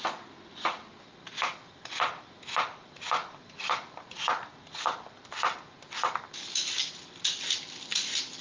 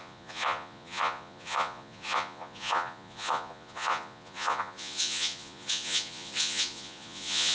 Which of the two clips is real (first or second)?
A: first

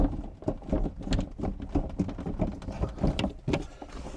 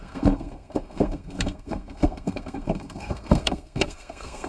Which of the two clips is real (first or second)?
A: first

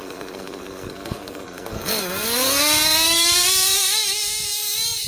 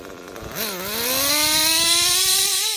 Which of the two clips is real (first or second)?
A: second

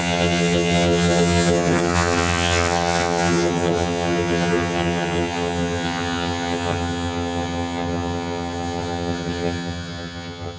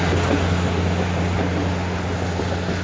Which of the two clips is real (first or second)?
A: second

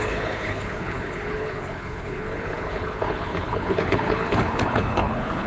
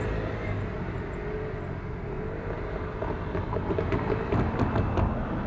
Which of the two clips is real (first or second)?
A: second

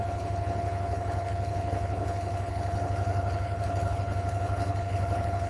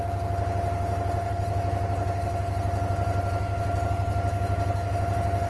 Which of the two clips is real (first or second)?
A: second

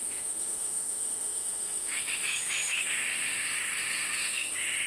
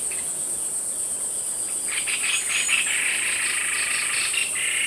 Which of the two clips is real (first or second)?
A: second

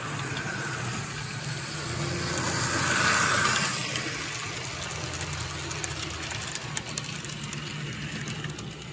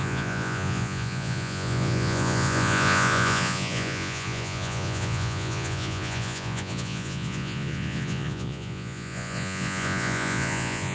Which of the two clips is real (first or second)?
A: first